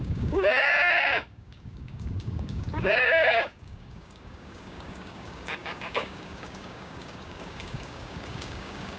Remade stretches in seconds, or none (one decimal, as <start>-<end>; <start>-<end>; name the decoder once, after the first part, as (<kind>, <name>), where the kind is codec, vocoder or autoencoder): 0.0-9.0 (codec, DAC)